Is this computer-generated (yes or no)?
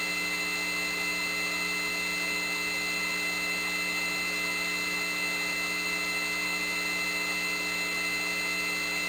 no